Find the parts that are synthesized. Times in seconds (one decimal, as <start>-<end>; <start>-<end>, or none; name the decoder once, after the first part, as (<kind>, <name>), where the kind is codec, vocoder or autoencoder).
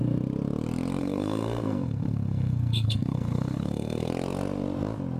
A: 1.0-4.1 (codec, SNAC)